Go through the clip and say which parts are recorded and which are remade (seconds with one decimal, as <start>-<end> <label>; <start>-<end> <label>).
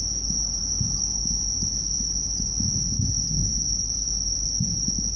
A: 0.0-5.2 recorded